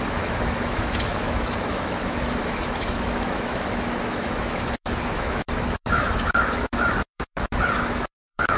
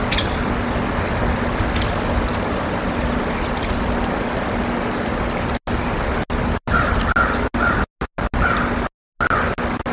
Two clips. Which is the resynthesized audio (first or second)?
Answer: first